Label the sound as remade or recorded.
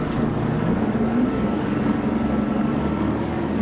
remade